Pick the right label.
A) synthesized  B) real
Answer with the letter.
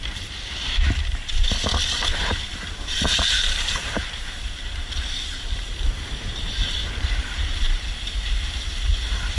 A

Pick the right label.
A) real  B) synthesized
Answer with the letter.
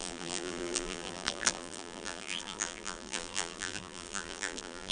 B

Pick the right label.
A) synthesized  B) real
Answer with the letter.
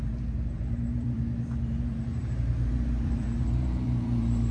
A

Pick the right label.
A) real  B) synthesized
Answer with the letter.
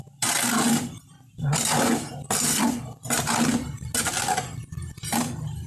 A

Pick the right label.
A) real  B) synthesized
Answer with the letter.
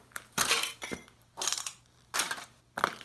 B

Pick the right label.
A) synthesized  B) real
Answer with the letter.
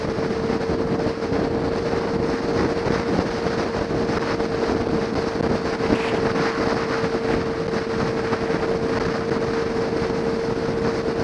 B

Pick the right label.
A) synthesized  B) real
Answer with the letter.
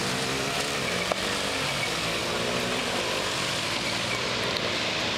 A